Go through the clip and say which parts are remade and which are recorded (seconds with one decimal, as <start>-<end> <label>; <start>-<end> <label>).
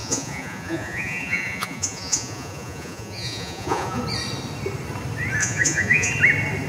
0.0-4.0 remade; 4.0-5.4 recorded; 5.4-6.1 remade; 6.1-6.7 recorded